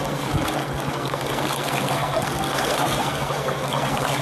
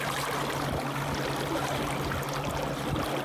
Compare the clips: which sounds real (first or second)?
second